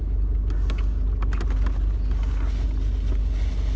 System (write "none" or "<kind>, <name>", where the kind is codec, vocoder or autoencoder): none